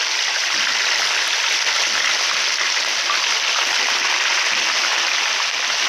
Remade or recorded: recorded